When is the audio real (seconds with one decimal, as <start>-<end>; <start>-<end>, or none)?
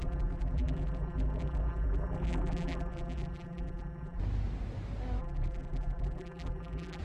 4.2-5.2